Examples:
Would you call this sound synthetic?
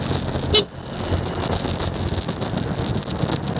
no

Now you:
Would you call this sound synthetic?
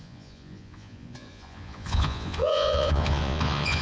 yes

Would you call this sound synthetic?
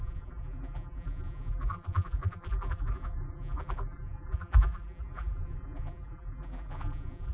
yes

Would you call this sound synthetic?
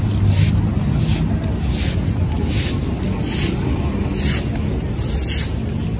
no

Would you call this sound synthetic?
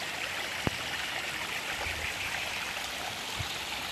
no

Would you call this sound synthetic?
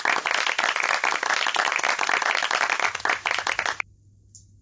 no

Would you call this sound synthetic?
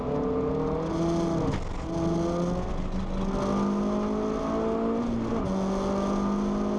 no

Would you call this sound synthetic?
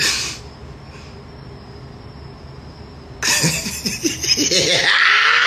no